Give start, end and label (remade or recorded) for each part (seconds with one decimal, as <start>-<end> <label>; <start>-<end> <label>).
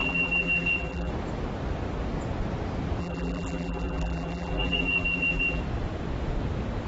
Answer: 0.0-1.1 remade; 1.1-3.0 recorded; 3.0-5.6 remade; 5.6-6.9 recorded